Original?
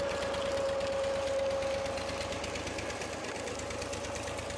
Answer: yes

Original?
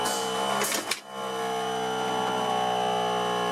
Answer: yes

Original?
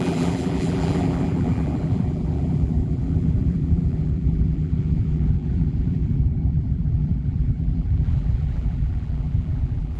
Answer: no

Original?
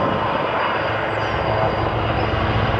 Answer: yes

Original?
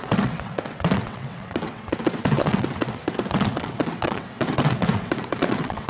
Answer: no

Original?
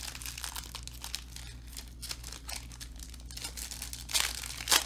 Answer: yes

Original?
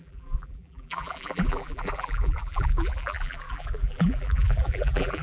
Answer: no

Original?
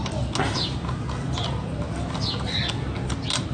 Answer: yes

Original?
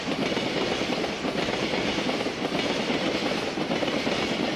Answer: yes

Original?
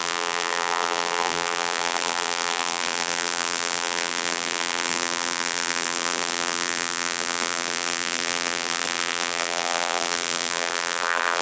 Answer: no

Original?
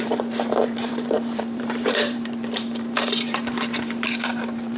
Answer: no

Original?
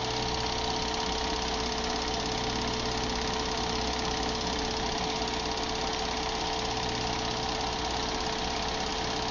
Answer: yes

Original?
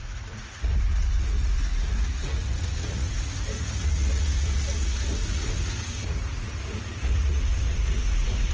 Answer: no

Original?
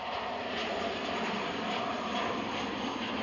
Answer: yes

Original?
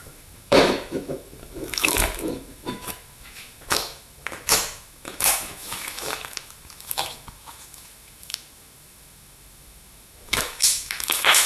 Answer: no